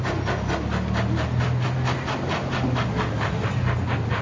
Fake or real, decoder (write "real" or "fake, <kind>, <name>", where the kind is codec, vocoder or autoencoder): real